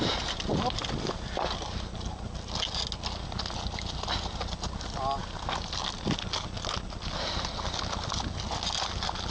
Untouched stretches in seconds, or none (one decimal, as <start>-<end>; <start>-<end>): 0.0-9.3